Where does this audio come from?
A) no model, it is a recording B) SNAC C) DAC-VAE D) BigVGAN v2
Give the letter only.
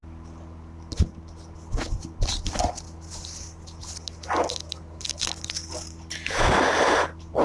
A